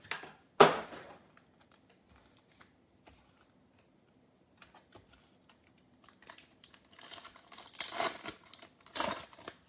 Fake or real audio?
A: real